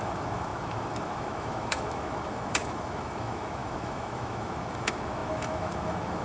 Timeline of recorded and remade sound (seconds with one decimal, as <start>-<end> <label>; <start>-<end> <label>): 0.0-6.2 remade